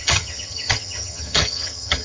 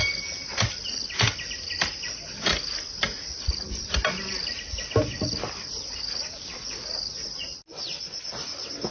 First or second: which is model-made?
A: first